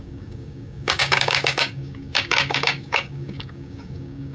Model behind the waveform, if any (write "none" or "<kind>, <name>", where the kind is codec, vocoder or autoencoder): codec, DAC